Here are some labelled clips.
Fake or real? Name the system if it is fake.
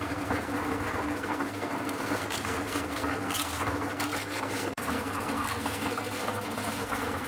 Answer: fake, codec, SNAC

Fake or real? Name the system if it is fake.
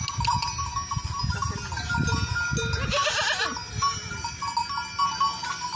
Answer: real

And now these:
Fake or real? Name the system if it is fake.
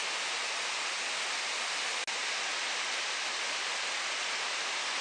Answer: real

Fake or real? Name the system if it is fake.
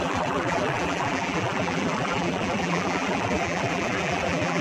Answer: fake, vocoder, BigVGAN v2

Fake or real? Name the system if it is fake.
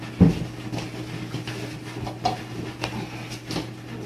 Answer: real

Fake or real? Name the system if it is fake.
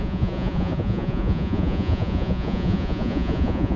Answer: fake, vocoder, Vocos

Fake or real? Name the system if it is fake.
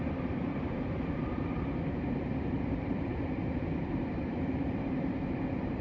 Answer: fake, vocoder, BigVGAN v2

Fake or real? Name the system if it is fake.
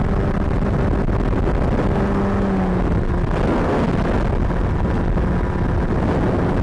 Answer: real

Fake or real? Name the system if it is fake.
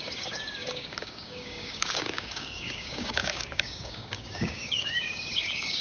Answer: fake, codec, DAC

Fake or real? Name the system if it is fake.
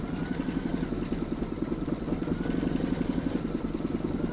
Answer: real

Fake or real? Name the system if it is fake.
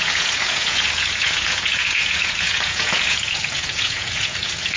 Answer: fake, vocoder, Vocos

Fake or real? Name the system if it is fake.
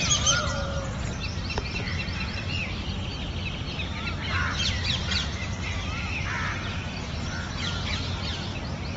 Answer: real